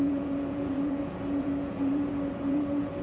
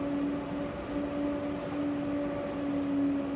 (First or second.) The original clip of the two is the second